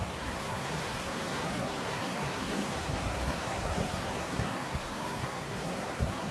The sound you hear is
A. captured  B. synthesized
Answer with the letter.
B